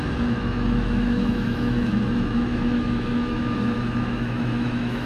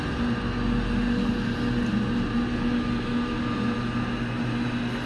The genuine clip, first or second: second